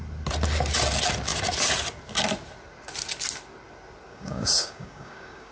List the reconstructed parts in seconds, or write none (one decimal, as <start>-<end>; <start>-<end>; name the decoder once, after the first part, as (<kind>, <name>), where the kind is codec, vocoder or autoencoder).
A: 4.1-5.5 (codec, DAC)